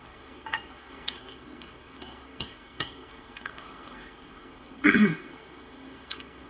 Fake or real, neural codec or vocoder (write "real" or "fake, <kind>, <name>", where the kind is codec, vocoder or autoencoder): fake, codec, SNAC